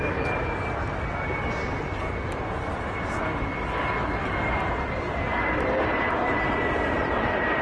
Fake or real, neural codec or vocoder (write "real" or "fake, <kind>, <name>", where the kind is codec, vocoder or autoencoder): real